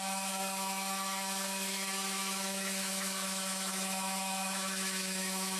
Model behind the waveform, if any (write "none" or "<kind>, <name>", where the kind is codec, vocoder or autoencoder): autoencoder, DAC-VAE